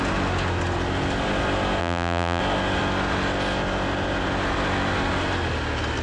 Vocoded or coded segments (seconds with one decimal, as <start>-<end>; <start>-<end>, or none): 1.8-2.4